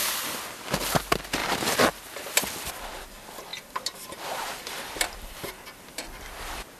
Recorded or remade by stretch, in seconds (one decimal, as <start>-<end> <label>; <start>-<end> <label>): 0.0-1.4 recorded; 1.4-2.0 remade; 2.0-3.5 recorded; 3.5-5.5 remade; 5.5-6.8 recorded